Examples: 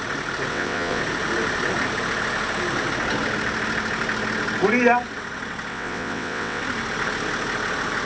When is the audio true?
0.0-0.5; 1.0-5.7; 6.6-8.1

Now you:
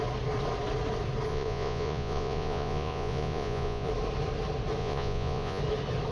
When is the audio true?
0.0-1.3; 3.9-4.8; 5.6-6.1

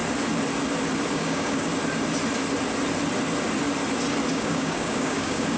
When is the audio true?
0.0-1.1; 1.7-4.3

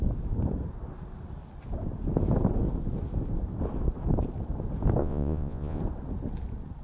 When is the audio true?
0.0-5.0; 5.8-6.8

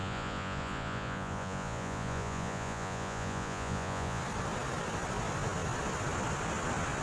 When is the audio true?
4.2-7.0